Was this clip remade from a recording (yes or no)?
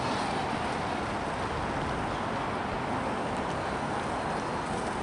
no